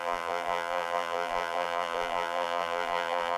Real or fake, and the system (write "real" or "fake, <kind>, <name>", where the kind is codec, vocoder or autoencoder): fake, vocoder, BigVGAN v2